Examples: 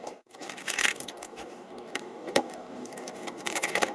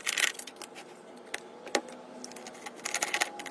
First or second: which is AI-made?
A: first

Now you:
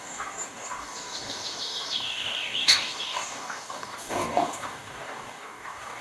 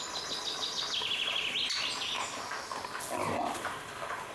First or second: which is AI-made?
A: first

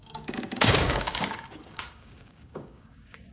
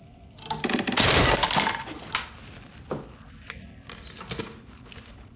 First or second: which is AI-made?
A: first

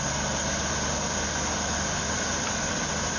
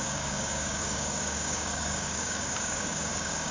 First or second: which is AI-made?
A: second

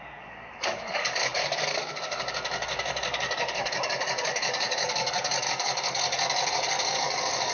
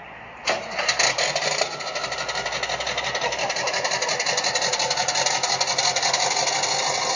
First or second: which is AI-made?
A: first